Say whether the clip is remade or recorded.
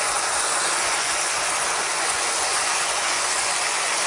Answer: remade